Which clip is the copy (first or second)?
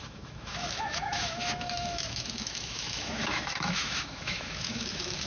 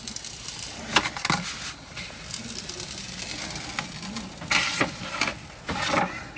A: first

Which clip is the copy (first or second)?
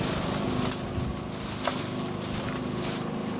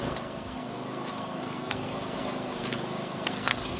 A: second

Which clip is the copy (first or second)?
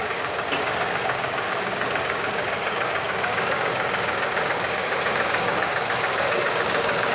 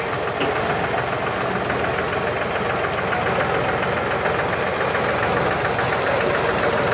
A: first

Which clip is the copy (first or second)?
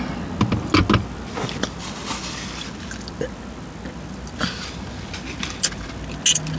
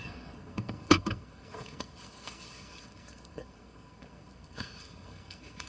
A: second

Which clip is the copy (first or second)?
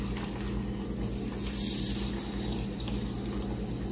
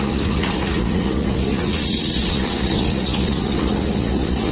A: second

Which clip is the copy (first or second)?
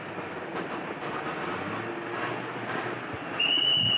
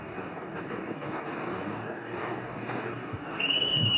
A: second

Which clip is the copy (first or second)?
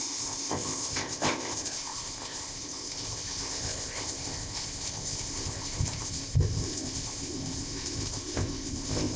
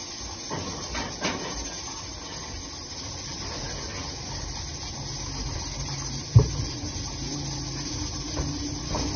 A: first